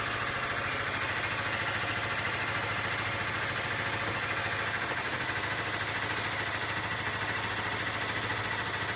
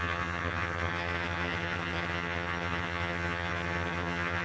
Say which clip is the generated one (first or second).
second